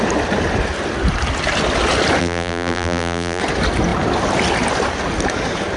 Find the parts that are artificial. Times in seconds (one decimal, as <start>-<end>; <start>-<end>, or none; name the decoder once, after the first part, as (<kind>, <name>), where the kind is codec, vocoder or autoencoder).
2.2-3.4 (vocoder, BigVGAN v2)